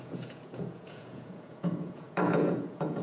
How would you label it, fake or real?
fake